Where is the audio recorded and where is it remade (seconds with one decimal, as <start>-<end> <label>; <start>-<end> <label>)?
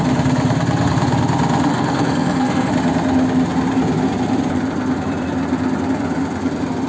0.0-1.7 recorded; 1.7-2.7 remade; 2.7-6.9 recorded